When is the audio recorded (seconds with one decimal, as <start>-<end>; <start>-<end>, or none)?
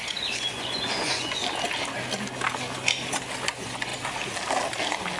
1.4-3.5; 3.9-5.2